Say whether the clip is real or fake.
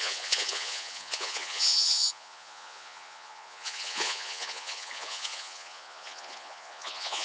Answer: fake